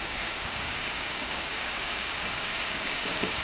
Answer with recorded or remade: remade